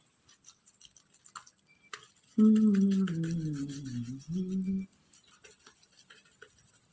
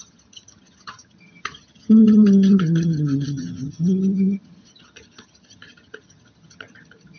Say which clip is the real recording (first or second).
first